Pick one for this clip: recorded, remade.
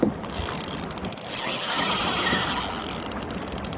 recorded